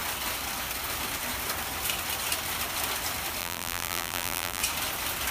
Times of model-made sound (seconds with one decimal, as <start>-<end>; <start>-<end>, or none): 3.4-4.6